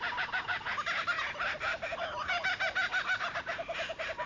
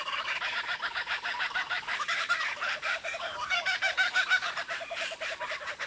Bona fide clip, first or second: first